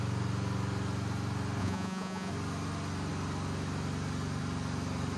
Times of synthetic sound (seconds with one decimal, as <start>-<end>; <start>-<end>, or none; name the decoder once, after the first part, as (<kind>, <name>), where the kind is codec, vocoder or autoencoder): 1.6-2.3 (vocoder, Vocos)

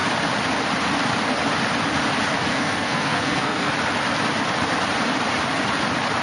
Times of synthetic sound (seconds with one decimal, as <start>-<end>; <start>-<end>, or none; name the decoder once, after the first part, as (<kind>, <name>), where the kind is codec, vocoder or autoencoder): 2.5-3.7 (codec, SNAC)

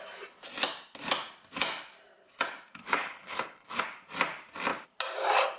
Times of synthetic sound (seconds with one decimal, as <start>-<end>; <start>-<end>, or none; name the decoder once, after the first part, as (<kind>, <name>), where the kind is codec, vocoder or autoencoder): 2.8-3.8 (codec, HILCodec)

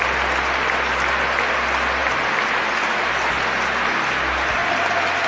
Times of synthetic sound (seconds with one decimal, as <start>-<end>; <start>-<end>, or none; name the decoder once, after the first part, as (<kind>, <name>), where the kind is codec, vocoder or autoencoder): none

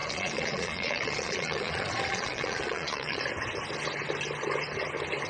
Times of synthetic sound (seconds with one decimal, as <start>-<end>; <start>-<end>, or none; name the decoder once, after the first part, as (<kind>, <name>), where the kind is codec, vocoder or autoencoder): 0.0-3.2 (vocoder, Vocos)

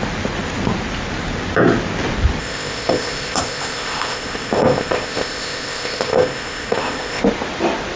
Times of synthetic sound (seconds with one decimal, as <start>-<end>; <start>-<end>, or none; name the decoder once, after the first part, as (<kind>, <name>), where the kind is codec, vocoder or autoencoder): 2.4-7.2 (codec, ZipCodec)

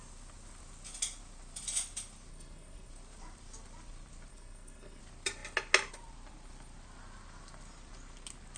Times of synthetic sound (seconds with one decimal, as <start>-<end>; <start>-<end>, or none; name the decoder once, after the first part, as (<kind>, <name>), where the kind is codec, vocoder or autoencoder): 2.3-2.9 (codec, SNAC); 4.3-5.0

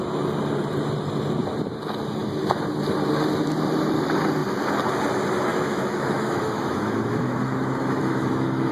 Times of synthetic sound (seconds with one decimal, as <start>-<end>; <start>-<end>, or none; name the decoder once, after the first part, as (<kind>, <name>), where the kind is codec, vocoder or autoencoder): 5.5-8.7 (autoencoder, DAC-VAE)